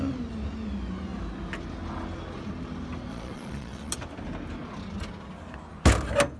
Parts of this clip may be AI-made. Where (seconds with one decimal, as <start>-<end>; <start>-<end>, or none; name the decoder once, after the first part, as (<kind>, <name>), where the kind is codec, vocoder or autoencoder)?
3.1-3.9 (vocoder, Vocos)